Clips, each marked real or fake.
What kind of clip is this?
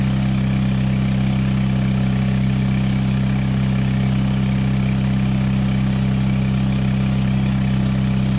real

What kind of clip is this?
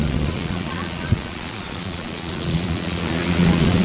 fake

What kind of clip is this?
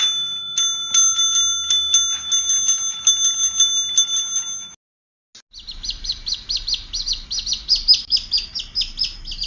real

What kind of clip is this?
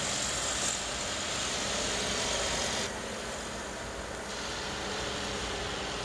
real